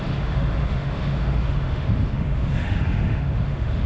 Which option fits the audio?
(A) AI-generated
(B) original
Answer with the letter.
A